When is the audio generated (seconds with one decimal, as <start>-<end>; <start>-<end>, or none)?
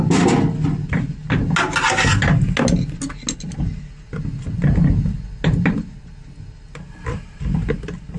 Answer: none